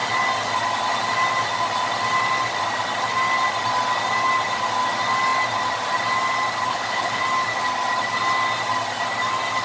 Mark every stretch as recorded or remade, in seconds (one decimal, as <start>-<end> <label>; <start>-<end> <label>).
0.0-6.7 recorded; 6.7-7.2 remade; 7.2-9.6 recorded